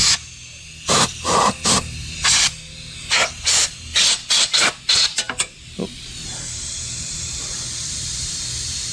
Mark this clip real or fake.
real